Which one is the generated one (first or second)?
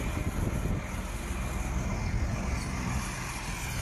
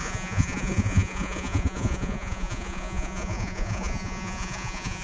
second